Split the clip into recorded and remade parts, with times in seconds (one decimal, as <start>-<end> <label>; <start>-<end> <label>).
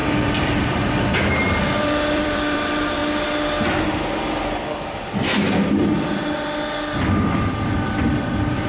0.0-3.0 remade; 3.0-8.0 recorded; 8.0-8.7 remade